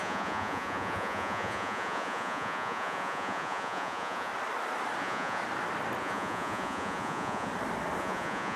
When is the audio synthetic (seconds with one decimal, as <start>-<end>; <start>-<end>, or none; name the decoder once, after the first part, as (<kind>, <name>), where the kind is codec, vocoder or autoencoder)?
0.0-4.3 (vocoder, Vocos); 5.0-5.4; 6.0-7.5; 8.0-8.6